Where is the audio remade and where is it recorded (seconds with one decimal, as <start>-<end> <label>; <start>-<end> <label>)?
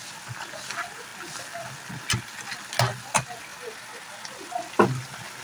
0.0-5.4 recorded